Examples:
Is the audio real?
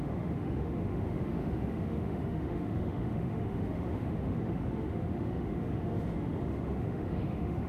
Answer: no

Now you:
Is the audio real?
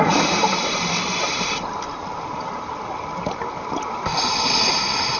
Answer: yes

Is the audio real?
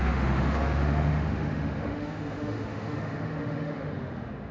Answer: no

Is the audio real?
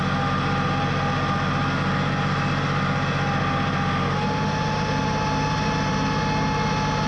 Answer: yes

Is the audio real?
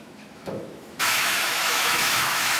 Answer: no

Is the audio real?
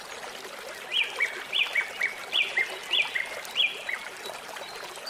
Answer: yes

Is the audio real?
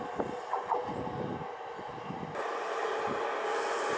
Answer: yes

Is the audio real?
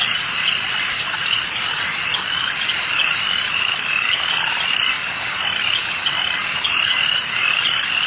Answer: yes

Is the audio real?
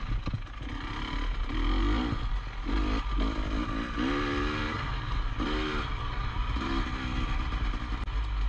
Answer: yes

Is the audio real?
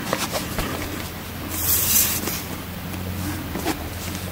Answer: yes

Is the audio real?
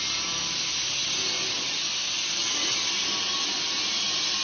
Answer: yes